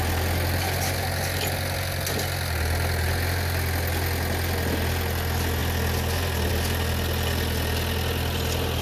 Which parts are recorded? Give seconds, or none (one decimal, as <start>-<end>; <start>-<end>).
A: 0.0-8.8